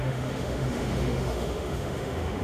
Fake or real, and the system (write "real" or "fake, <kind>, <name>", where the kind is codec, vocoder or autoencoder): fake, autoencoder, DAC-VAE